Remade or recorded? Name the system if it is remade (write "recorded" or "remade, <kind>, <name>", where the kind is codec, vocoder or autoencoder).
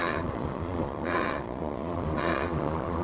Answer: remade, vocoder, Vocos